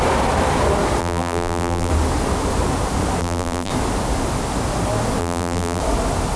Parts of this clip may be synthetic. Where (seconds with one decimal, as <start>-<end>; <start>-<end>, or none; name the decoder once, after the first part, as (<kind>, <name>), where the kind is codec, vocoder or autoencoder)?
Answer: 1.0-1.9 (vocoder, BigVGAN v2); 3.2-3.7; 5.2-5.8